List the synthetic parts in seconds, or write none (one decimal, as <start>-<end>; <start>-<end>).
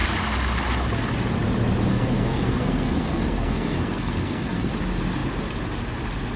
1.9-4.7